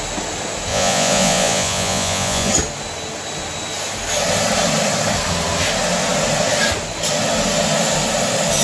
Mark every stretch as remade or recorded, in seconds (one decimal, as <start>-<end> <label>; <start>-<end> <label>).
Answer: 0.0-0.7 recorded; 0.7-2.5 remade; 2.5-8.6 recorded

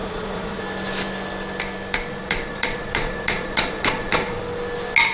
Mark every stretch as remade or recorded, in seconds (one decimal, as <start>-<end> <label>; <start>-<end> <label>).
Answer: 0.0-0.6 remade; 0.6-2.1 recorded; 2.1-4.4 remade; 4.4-5.1 recorded

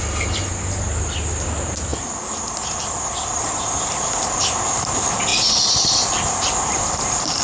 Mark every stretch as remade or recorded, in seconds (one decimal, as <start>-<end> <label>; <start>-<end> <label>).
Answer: 0.0-7.4 recorded

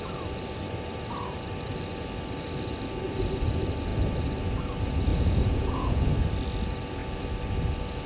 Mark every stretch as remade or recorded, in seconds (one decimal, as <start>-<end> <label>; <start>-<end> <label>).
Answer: 0.0-5.1 recorded; 5.1-6.1 remade; 6.1-8.1 recorded

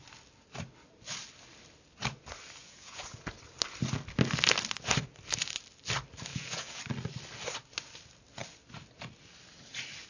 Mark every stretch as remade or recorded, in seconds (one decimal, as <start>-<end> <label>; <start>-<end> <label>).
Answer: 0.0-2.6 recorded; 2.6-3.3 remade; 3.3-6.3 recorded; 6.3-6.8 remade; 6.8-10.1 recorded

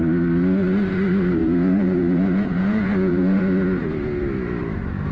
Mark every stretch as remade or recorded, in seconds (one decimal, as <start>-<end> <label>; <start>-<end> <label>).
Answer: 0.0-1.4 recorded; 1.4-3.4 remade; 3.4-5.1 recorded